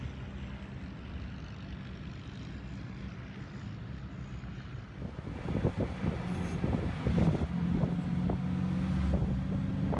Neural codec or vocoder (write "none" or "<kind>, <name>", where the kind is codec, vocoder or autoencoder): none